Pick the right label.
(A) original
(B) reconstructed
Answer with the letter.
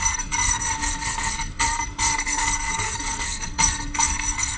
B